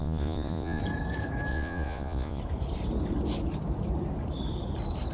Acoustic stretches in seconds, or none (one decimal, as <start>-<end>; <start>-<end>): 0.8-1.5; 2.4-5.1